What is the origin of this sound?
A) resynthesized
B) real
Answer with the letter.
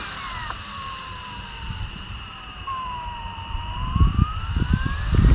A